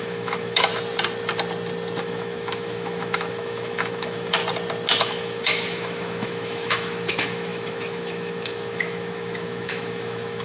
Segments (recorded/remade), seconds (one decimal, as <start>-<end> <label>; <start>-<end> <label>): 0.0-0.7 remade; 0.7-2.0 recorded; 2.0-4.4 remade; 4.4-5.0 recorded; 5.0-10.4 remade